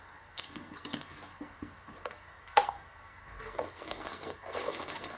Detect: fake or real fake